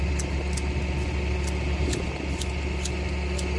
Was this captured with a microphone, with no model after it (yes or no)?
yes